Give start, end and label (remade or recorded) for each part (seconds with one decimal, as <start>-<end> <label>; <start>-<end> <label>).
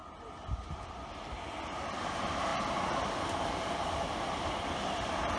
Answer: 0.0-2.0 recorded; 2.0-5.4 remade